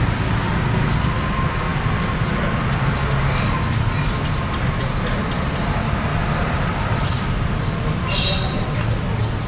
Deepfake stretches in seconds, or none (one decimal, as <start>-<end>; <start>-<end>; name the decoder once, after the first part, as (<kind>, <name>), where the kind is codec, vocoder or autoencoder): 6.1-8.3 (vocoder, BigVGAN v2)